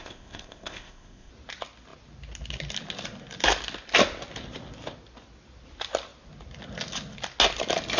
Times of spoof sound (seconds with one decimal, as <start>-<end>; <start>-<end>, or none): 0.0-1.3